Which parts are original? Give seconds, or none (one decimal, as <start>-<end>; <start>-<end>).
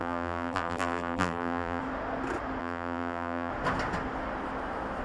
1.8-2.6; 3.5-5.0